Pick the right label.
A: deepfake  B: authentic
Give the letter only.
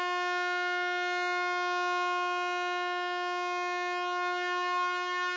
B